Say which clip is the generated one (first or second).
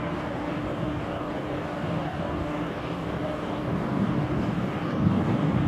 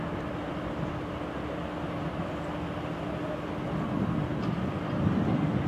first